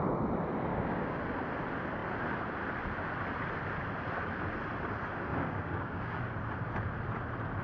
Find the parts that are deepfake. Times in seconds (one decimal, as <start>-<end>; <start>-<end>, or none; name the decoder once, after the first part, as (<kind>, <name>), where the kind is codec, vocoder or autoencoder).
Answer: 0.7-1.2 (codec, DAC); 5.3-6.2